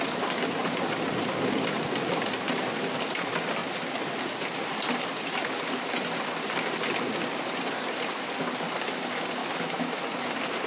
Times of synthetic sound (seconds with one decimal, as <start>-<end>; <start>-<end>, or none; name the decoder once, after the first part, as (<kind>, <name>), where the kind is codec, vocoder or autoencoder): 9.4-10.0 (autoencoder, DAC-VAE)